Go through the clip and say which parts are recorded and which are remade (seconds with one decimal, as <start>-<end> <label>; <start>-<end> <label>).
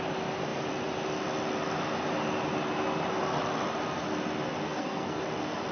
0.0-4.6 recorded; 4.6-5.2 remade; 5.2-5.7 recorded